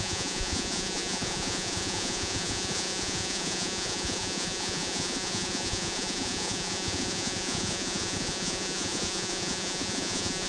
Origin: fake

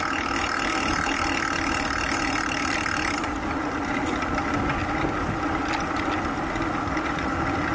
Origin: real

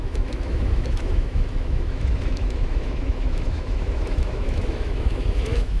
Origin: fake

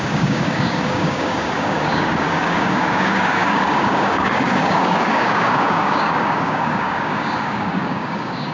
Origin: fake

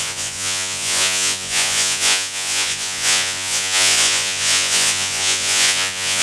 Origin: fake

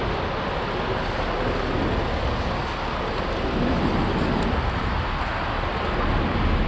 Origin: real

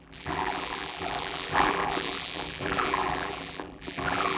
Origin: fake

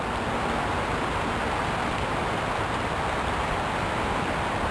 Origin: real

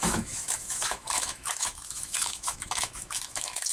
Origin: fake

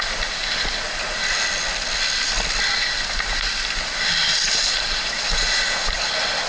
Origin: real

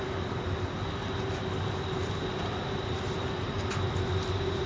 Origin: real